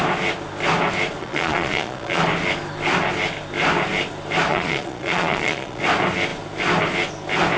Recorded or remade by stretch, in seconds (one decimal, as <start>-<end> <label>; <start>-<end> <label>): 0.0-1.2 recorded; 1.2-2.2 remade; 2.2-4.5 recorded; 4.5-5.8 remade; 5.8-7.6 recorded